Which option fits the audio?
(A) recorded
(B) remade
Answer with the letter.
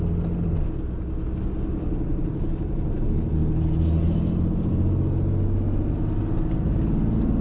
A